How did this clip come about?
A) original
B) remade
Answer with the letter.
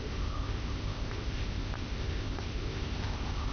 B